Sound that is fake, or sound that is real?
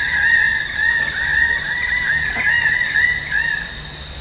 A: real